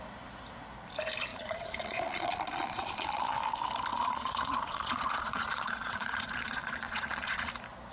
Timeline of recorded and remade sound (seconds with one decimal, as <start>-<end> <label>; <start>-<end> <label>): 0.0-1.3 recorded; 1.3-3.4 remade; 3.4-3.9 recorded; 3.9-7.5 remade; 7.5-7.9 recorded